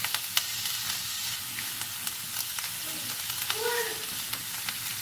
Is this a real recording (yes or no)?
yes